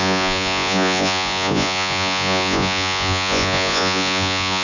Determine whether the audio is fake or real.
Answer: fake